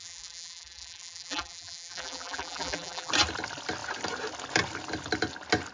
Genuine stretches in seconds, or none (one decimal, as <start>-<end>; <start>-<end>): 3.1-5.7